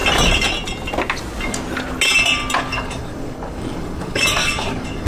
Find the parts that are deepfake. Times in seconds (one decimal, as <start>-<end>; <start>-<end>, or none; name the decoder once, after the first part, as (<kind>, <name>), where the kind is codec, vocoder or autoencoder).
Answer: 2.7-5.1 (codec, DAC)